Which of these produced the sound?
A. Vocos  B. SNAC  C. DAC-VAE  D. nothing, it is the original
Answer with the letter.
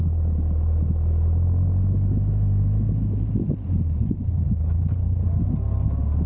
D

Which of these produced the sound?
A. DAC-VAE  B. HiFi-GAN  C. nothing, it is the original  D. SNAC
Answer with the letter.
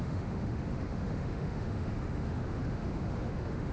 A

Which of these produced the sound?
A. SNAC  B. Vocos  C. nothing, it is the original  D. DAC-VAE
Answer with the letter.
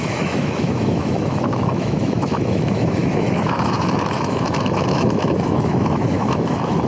D